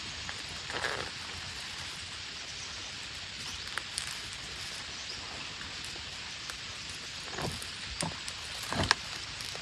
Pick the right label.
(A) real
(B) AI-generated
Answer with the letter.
A